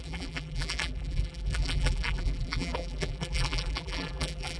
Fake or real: fake